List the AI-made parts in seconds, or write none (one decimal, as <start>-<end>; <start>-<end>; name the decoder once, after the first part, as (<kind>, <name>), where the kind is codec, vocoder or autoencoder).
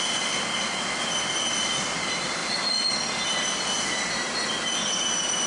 none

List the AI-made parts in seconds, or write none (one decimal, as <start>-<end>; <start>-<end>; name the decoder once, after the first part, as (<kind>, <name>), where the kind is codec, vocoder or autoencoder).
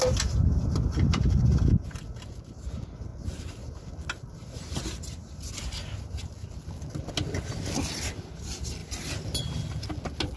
none